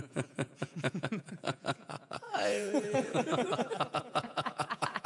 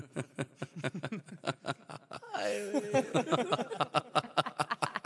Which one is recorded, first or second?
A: second